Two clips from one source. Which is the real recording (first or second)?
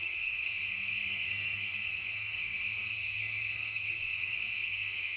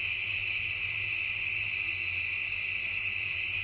second